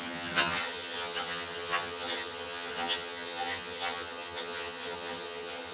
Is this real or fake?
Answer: fake